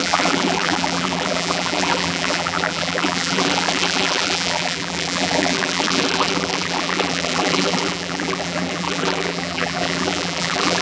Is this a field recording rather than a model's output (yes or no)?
no